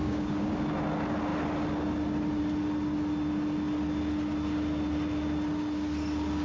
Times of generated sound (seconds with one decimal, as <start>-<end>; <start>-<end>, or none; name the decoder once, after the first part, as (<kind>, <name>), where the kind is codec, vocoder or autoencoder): 0.0-0.5 (codec, DAC)